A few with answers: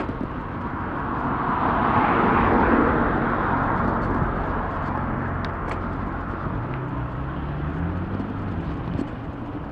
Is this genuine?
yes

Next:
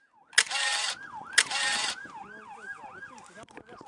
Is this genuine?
yes